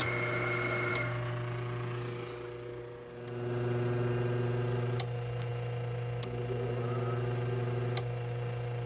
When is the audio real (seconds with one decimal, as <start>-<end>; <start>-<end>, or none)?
0.0-8.9